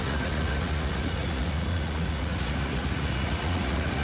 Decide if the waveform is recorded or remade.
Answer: remade